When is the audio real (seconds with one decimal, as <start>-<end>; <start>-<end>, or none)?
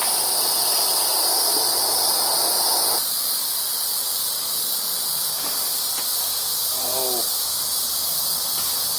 0.0-9.0